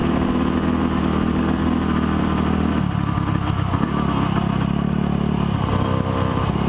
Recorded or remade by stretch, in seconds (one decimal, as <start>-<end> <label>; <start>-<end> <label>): 0.0-6.7 recorded